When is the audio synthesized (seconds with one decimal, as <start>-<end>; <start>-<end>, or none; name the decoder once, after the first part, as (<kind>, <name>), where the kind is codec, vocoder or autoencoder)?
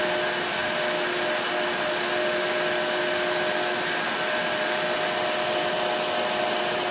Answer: none